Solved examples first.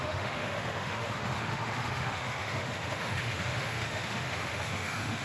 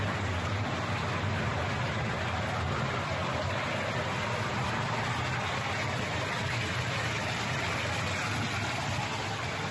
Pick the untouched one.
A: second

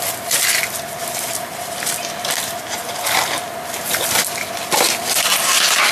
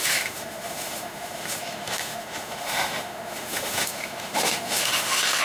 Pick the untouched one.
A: first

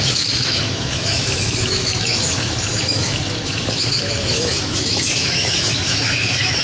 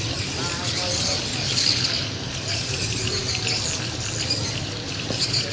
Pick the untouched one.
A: second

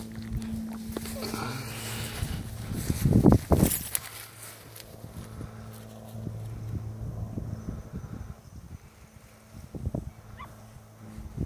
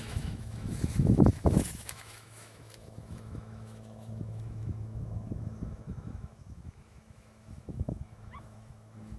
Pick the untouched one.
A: first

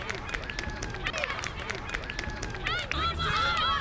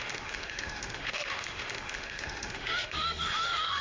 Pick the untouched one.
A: first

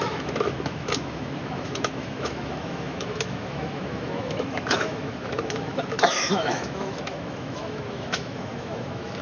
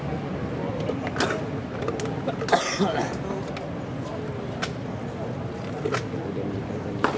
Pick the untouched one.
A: second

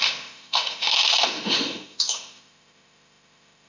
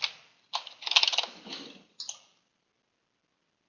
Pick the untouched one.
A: second